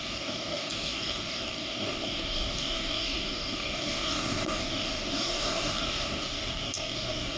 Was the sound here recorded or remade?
remade